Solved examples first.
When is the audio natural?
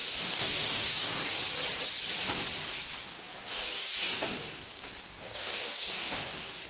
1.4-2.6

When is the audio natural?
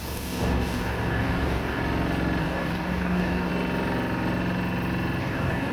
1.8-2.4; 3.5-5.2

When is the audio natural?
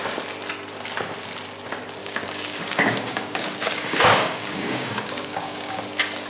0.0-2.0; 5.8-6.3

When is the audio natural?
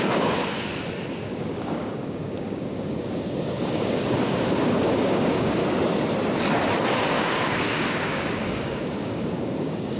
0.4-1.1; 5.6-7.2